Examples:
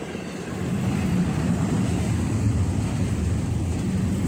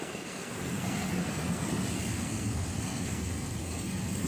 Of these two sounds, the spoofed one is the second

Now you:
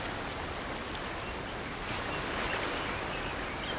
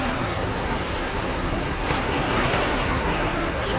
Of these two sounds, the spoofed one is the second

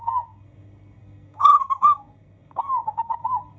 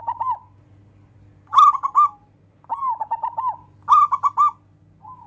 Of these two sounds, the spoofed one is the first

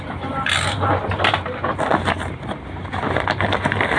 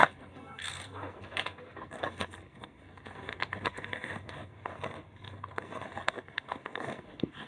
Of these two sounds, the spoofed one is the second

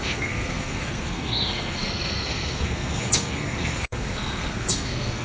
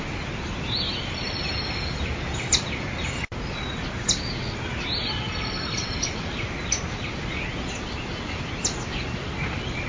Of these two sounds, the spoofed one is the first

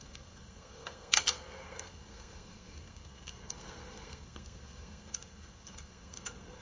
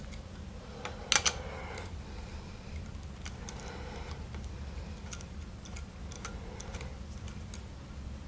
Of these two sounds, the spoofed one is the first